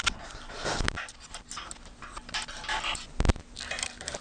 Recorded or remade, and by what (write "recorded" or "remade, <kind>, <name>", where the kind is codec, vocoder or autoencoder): recorded